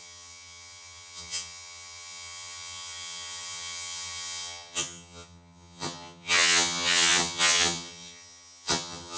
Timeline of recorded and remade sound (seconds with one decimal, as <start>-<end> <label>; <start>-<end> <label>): 0.0-9.2 remade